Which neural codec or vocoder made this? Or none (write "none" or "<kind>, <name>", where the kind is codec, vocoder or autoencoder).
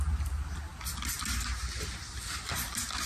none